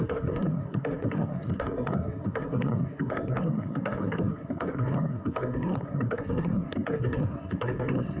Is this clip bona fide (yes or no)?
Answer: no